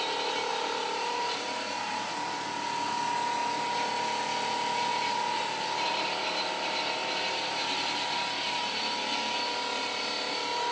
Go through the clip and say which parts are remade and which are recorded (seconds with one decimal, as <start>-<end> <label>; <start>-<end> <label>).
0.0-0.5 recorded; 0.5-2.1 remade; 2.1-4.9 recorded; 4.9-8.2 remade; 8.2-10.7 recorded